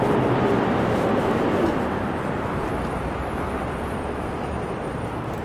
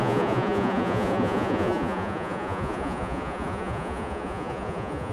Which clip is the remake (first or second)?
second